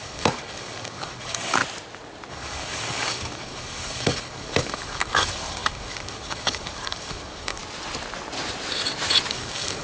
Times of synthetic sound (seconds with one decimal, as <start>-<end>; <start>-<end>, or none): 0.0-1.6; 2.3-7.6; 9.3-9.8